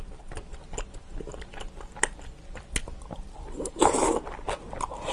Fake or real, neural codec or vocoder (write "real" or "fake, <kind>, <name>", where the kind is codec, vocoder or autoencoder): real